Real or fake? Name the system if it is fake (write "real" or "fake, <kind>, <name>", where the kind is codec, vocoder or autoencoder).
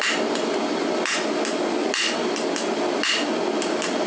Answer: real